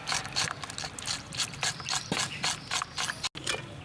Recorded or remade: recorded